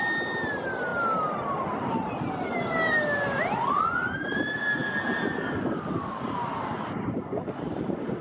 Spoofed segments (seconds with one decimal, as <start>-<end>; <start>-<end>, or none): 0.9-3.0